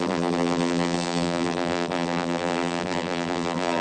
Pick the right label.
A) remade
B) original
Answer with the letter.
A